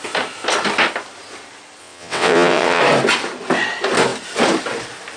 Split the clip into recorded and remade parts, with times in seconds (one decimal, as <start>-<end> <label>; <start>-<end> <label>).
0.0-1.8 recorded; 1.8-2.8 remade; 2.8-5.2 recorded